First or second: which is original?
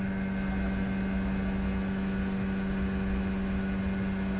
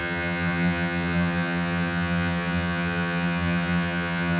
first